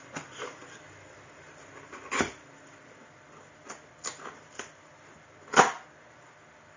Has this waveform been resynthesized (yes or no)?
no